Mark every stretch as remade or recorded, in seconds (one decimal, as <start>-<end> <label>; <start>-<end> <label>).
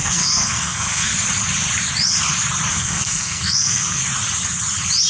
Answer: 0.0-1.1 remade; 1.1-2.7 recorded; 2.7-4.0 remade; 4.0-5.1 recorded